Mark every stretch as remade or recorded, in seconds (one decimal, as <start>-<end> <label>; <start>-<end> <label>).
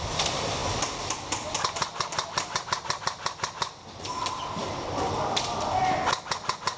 0.0-6.8 recorded